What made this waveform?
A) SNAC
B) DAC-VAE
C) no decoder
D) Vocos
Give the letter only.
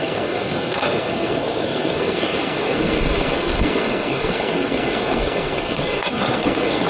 A